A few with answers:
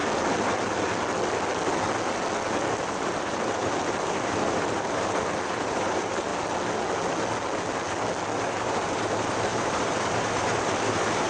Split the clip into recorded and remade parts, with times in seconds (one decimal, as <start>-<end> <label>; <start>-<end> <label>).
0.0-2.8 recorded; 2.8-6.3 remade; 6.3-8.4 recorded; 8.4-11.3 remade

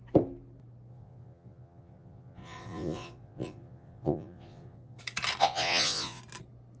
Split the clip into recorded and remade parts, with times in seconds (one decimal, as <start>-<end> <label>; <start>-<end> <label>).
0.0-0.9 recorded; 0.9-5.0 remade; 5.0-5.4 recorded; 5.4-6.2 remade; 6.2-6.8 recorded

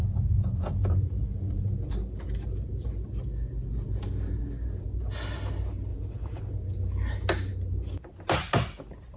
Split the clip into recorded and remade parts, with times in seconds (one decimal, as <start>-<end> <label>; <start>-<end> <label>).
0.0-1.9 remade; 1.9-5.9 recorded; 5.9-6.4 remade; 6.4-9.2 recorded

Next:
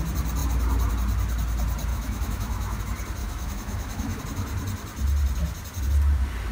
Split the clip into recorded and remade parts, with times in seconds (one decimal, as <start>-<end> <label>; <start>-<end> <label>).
0.0-1.9 recorded; 1.9-2.8 remade; 2.8-3.2 recorded; 3.2-4.2 remade; 4.2-6.5 recorded

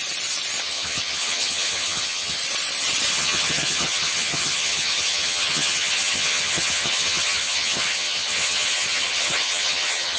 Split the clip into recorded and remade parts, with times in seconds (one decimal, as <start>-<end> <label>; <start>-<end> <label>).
0.0-0.6 recorded; 0.6-2.4 remade; 2.4-3.1 recorded; 3.1-10.2 remade

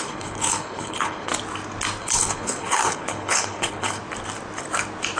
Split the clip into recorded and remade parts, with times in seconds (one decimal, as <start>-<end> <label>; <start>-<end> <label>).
0.0-1.3 remade; 1.3-2.0 recorded; 2.0-4.0 remade; 4.0-5.2 recorded

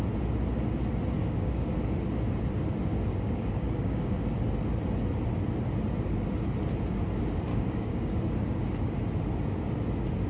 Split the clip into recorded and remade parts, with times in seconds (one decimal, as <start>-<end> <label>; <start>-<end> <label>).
0.0-1.2 recorded; 1.2-1.7 remade; 1.7-3.1 recorded; 3.1-4.1 remade; 4.1-7.5 recorded; 7.5-8.2 remade; 8.2-10.3 recorded